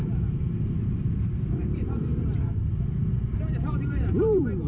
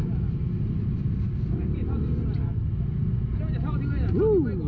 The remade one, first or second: first